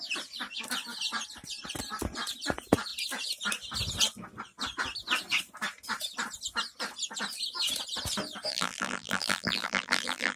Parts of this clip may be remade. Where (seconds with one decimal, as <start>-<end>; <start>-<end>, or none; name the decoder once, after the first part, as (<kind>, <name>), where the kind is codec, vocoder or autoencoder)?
8.5-10.4 (vocoder, BigVGAN v2)